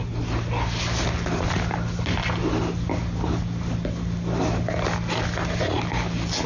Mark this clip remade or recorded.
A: recorded